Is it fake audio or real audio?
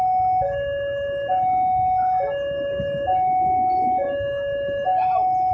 real